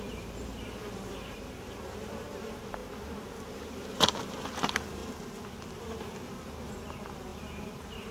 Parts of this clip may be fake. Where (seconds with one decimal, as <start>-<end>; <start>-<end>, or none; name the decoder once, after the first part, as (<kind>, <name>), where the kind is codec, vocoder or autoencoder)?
0.0-5.0 (vocoder, BigVGAN v2); 5.8-8.1